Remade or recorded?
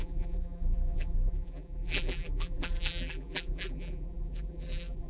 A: remade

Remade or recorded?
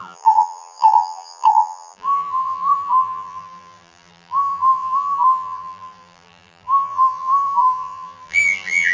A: remade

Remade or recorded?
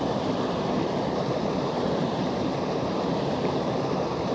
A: remade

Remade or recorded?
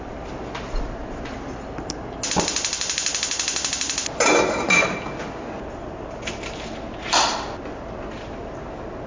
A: recorded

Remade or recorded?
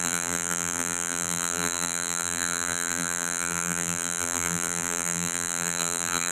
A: remade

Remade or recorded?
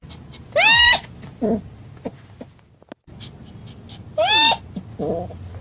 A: recorded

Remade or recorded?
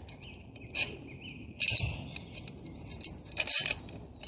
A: recorded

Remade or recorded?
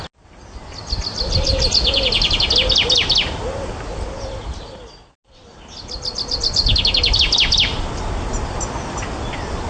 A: recorded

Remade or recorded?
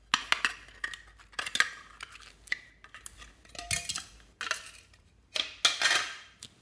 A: recorded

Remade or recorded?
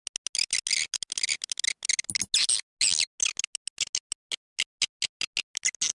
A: recorded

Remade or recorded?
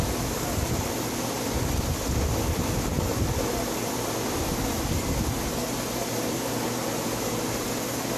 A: remade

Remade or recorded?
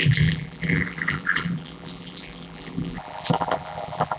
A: remade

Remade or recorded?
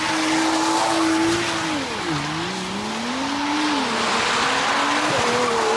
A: recorded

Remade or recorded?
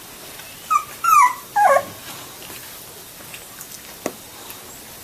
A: recorded